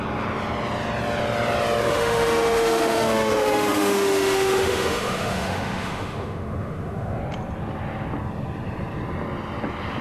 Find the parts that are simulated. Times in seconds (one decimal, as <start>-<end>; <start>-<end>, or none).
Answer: 1.9-7.2